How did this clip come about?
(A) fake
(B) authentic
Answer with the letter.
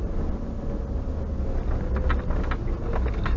B